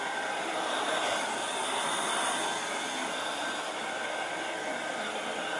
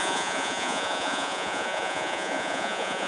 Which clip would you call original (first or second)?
first